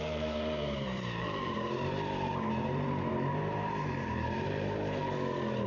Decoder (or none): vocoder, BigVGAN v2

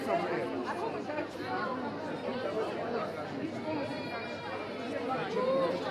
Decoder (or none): none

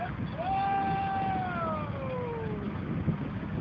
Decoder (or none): none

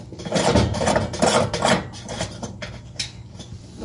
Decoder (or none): vocoder, BigVGAN v2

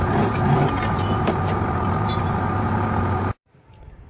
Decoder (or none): vocoder, BigVGAN v2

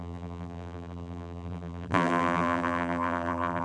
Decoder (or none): vocoder, BigVGAN v2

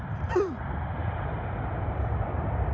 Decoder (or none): vocoder, BigVGAN v2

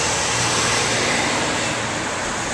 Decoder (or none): none